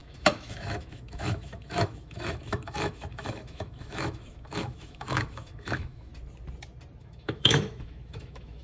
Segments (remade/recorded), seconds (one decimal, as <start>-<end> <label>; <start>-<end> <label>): 0.0-6.1 remade; 6.1-7.0 recorded; 7.0-8.6 remade